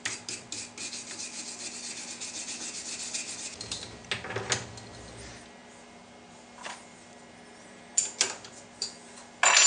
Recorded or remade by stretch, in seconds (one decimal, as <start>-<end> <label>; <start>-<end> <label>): 0.0-9.7 recorded